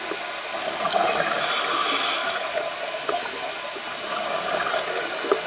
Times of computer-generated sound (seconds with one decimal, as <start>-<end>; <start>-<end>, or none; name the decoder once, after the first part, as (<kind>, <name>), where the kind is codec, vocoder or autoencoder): 0.9-1.5 (autoencoder, DAC-VAE)